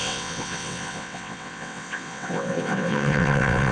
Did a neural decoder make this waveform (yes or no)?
yes